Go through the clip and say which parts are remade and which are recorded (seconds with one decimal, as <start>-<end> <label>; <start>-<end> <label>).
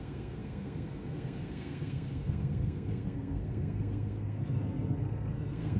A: 0.0-5.8 remade